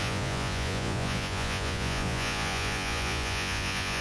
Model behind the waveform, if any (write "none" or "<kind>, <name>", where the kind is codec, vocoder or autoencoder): vocoder, Vocos